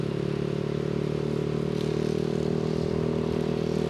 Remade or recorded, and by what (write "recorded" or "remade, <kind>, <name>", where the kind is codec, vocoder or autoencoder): recorded